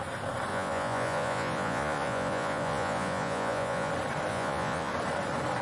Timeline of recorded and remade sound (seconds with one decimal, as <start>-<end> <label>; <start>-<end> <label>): 0.0-0.5 recorded; 0.5-3.9 remade; 3.9-4.3 recorded; 4.3-4.9 remade; 4.9-5.6 recorded